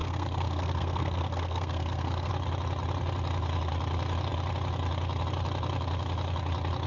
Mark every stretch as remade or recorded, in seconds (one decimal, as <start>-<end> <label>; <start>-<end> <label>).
0.0-2.3 remade; 2.3-6.9 recorded